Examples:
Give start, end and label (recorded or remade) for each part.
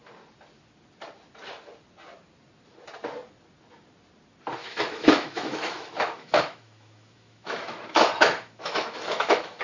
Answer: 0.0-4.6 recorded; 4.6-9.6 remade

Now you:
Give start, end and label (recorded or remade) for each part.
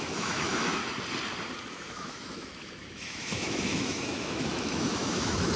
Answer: 0.0-0.8 remade; 0.8-1.7 recorded; 1.7-5.6 remade